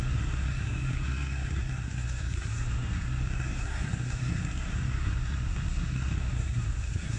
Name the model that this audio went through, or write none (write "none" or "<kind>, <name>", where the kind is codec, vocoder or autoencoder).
codec, SNAC